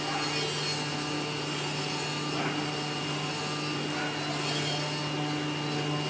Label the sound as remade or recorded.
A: recorded